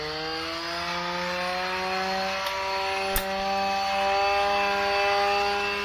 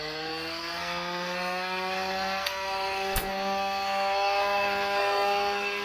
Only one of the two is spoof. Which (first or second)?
second